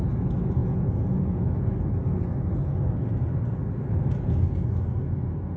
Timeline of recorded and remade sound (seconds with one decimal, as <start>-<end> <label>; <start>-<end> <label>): 0.0-0.6 recorded; 0.6-1.4 remade; 1.4-5.6 recorded